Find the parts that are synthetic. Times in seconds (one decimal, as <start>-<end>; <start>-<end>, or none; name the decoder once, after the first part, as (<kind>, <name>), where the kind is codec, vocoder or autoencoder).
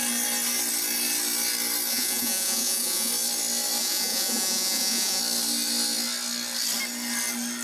1.9-3.1 (vocoder, Vocos); 3.8-5.2